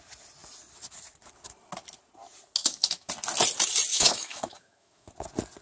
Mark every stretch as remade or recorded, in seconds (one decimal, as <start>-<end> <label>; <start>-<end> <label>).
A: 0.0-2.6 recorded; 2.6-3.1 remade; 3.1-3.9 recorded; 3.9-5.1 remade; 5.1-5.6 recorded